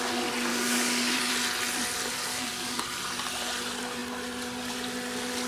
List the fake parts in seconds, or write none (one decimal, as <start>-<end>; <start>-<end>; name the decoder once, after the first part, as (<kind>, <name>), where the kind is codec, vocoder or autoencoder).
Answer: 0.5-1.3 (codec, DAC); 2.3-2.8